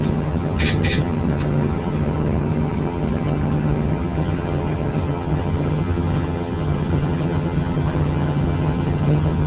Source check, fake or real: fake